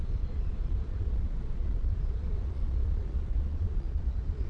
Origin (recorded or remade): remade